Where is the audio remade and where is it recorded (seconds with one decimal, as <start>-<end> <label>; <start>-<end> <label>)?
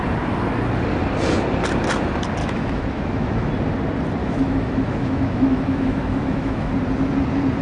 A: 0.0-2.4 recorded; 2.4-3.5 remade; 3.5-4.2 recorded; 4.2-6.7 remade; 6.7-7.6 recorded